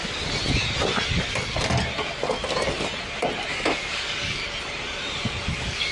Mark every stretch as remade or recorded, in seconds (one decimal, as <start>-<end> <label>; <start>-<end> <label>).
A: 0.0-3.5 recorded; 3.5-4.4 remade; 4.4-5.5 recorded; 5.5-5.9 remade